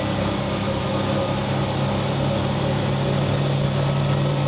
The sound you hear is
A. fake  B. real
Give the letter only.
A